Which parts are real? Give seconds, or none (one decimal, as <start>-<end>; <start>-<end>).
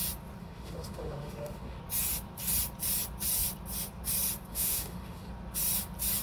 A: 0.0-0.4; 1.8-4.5; 5.3-6.2